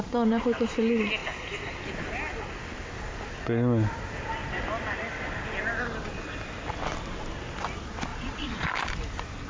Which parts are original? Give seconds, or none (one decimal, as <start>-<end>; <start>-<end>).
0.0-8.1; 8.7-9.5